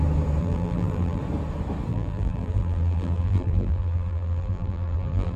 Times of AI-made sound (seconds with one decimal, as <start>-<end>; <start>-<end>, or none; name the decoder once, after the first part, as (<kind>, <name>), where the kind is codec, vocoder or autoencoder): 0.4-1.2 (vocoder, BigVGAN v2); 1.9-5.4